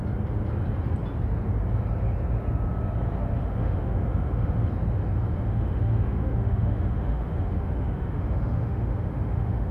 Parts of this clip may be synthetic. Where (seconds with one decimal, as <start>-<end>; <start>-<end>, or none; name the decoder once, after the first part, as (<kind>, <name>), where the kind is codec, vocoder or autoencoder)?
3.4-4.7 (autoencoder, DAC-VAE); 5.3-9.7